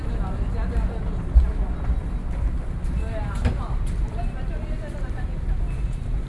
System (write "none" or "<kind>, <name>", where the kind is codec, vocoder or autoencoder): none